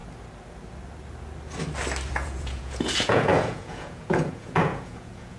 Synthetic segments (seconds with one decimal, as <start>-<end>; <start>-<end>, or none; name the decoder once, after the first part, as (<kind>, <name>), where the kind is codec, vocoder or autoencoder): 2.1-5.4 (vocoder, Vocos)